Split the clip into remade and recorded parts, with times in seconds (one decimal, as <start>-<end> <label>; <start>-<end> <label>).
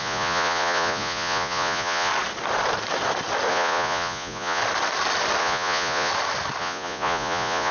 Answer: 0.0-2.1 remade; 2.1-3.5 recorded; 3.5-4.6 remade; 4.6-5.4 recorded; 5.4-6.1 remade; 6.1-6.6 recorded; 6.6-7.7 remade